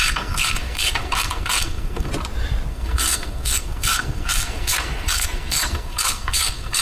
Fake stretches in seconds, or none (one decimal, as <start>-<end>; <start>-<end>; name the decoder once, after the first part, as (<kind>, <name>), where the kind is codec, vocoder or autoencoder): 0.0-2.1 (codec, SNAC); 2.7-6.8